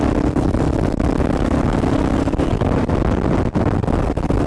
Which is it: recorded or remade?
recorded